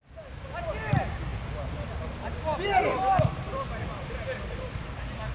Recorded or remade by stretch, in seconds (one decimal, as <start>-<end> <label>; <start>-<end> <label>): 0.0-5.3 recorded